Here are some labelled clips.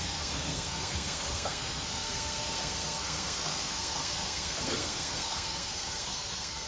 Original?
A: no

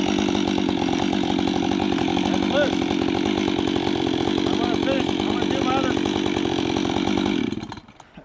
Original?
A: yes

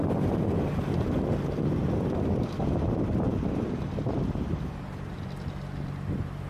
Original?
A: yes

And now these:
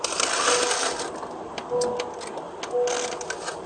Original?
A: yes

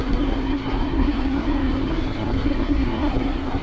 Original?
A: no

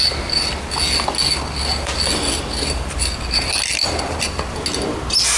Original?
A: yes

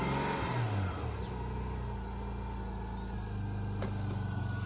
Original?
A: yes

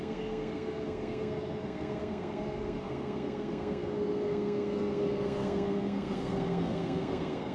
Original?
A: no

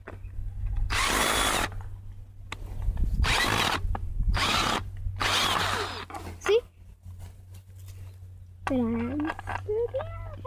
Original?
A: yes